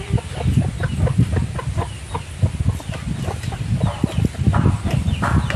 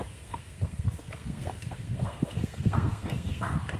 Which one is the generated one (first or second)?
second